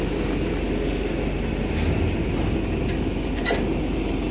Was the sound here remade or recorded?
recorded